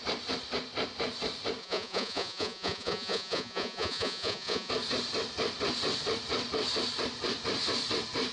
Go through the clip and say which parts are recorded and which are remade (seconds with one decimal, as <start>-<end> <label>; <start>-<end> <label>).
0.0-1.6 recorded; 1.6-4.7 remade; 4.7-8.3 recorded